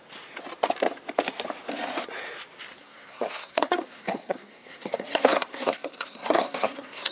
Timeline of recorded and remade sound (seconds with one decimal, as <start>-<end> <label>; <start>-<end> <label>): 0.0-2.8 recorded; 2.8-7.1 remade